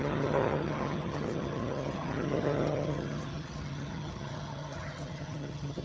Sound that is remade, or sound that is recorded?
remade